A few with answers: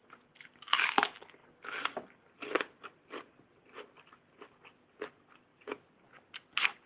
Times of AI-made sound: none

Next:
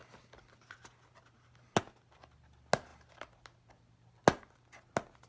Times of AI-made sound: none

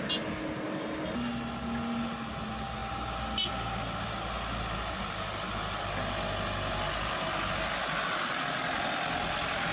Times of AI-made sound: none

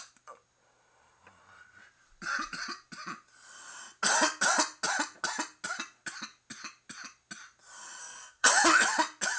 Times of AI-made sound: 8.0-8.5 (codec, SNAC)

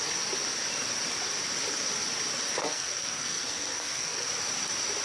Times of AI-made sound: 2.6-4.3 (codec, SNAC)